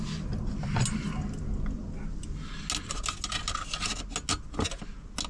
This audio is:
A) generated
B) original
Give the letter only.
B